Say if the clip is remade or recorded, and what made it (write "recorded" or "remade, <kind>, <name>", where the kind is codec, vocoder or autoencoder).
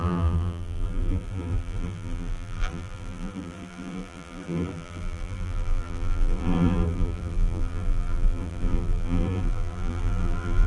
remade, vocoder, BigVGAN v2